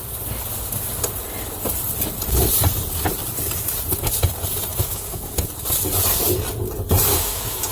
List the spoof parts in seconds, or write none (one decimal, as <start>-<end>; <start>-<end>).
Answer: 4.7-5.4; 7.1-7.7

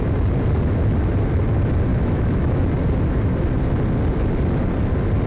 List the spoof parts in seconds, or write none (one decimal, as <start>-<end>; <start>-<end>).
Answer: 1.9-2.6

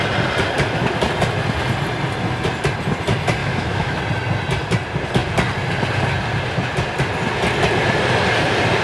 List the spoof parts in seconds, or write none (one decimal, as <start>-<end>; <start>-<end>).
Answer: 3.4-4.0

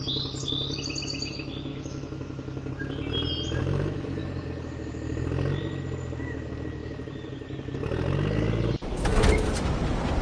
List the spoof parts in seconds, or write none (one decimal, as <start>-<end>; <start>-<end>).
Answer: 1.7-2.7; 3.6-4.2

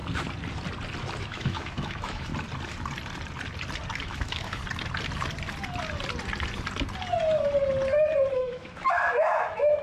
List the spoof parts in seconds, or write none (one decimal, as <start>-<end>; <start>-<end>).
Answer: 1.2-2.3; 4.0-4.6; 8.3-9.8

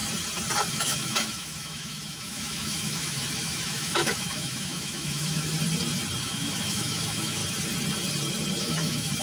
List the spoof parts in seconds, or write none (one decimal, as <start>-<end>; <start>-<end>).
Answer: 0.7-5.5; 6.2-7.4; 8.6-9.2

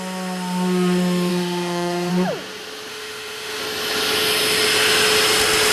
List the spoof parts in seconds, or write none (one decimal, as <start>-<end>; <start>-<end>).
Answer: 1.3-2.1; 2.9-3.6